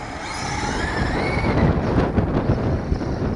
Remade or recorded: recorded